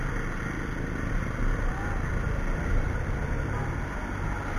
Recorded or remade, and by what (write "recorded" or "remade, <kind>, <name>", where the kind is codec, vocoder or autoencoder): recorded